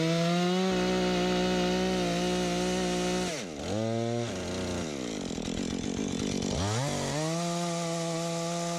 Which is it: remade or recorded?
recorded